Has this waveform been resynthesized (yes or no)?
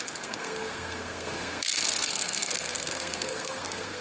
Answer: yes